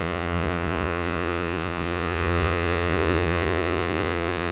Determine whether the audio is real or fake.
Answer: fake